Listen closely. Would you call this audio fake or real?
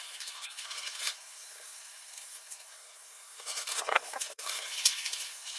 fake